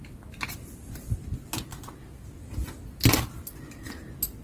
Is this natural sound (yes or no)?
yes